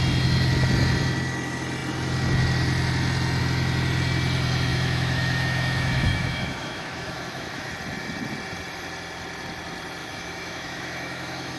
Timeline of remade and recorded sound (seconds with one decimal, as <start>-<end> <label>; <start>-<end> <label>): 0.0-4.7 recorded; 4.7-7.7 remade; 7.7-10.0 recorded; 10.0-11.6 remade